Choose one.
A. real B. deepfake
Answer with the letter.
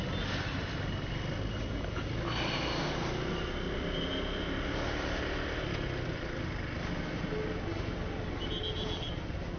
A